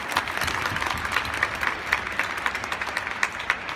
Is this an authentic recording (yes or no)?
yes